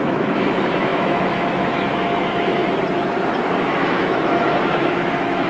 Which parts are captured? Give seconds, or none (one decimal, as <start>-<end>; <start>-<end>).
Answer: 2.6-3.6